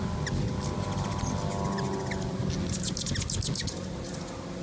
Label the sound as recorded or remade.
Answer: recorded